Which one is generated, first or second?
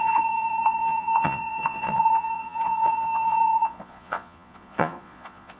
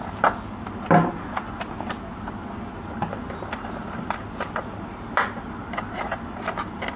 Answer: first